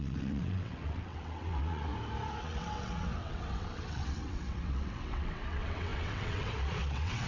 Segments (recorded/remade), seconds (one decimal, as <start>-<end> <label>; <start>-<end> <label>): 0.0-1.9 remade; 1.9-2.4 recorded; 2.4-7.3 remade